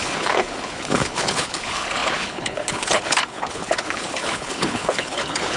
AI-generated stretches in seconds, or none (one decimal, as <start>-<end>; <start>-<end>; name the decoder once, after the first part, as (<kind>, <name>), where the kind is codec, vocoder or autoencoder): 0.0-5.6 (codec, HILCodec)